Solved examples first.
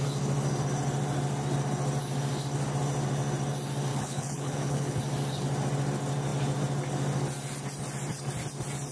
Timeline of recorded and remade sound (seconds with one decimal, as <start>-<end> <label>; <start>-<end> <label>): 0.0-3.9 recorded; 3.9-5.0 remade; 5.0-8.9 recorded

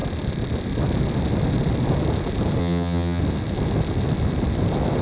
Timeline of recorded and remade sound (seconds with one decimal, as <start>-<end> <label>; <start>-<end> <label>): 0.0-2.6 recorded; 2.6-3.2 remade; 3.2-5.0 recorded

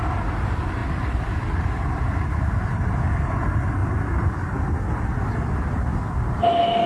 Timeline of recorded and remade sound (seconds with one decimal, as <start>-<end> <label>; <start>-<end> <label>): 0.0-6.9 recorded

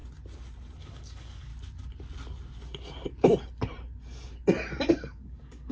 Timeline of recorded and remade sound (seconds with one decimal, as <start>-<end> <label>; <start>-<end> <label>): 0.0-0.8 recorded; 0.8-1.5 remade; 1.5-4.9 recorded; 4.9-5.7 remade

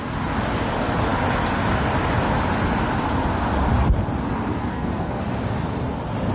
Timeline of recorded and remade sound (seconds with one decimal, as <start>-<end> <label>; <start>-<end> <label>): 0.0-4.6 recorded; 4.6-5.2 remade; 5.2-6.3 recorded

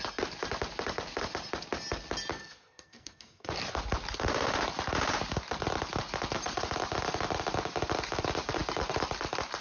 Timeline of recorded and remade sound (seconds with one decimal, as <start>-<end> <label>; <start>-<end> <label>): 0.0-2.3 recorded; 2.3-3.5 remade; 3.5-9.6 recorded

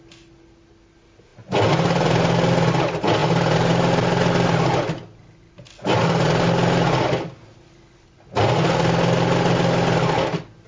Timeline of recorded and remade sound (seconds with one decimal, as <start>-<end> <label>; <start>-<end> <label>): 0.0-10.7 recorded